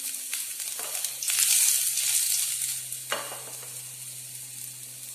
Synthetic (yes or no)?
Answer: no